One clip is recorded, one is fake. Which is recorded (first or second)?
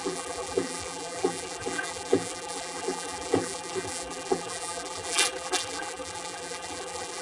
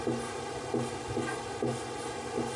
second